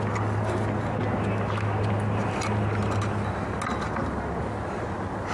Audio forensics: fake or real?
real